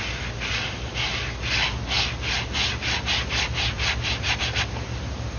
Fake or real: real